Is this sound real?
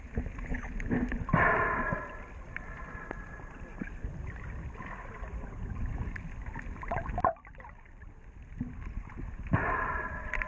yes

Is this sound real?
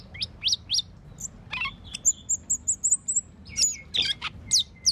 yes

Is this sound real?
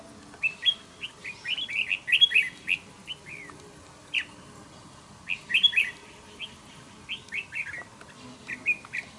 yes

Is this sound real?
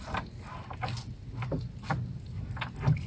yes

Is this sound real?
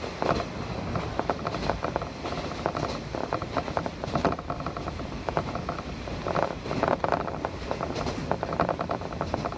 yes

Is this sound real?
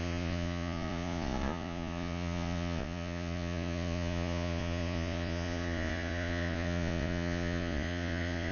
no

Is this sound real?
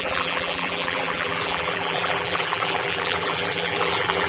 no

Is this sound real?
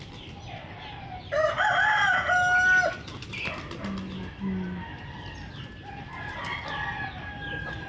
yes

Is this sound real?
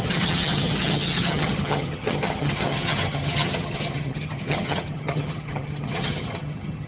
no